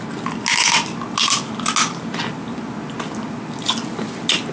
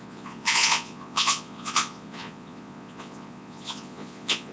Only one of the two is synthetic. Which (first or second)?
second